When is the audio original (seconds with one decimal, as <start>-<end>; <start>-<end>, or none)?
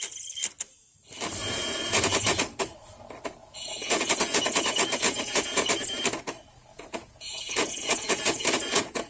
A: 0.0-1.4; 2.4-3.4; 5.7-6.6